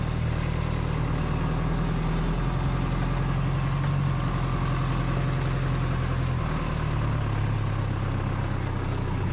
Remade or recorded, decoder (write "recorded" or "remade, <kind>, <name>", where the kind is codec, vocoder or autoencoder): recorded